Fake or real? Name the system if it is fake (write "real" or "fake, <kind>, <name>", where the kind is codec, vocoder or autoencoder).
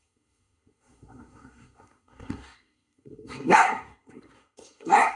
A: fake, codec, SNAC